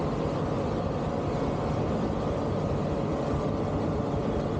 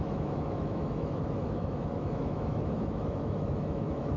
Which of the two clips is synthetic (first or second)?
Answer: second